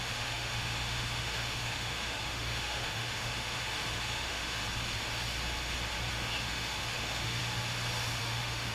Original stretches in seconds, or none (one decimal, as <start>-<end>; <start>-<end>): 4.6-6.1; 7.4-8.2